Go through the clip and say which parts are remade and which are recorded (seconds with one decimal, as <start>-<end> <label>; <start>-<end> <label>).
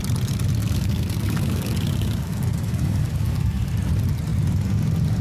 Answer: 0.0-0.6 recorded; 0.6-3.7 remade; 3.7-5.2 recorded